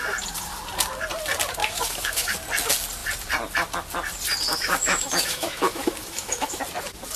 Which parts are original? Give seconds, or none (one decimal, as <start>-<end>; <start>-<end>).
0.0-1.6; 2.3-4.5; 6.6-7.2